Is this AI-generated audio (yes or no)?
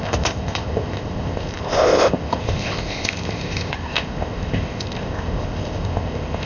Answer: yes